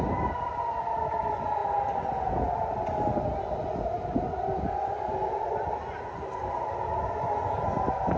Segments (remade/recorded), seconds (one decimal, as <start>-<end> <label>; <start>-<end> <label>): 0.0-8.2 recorded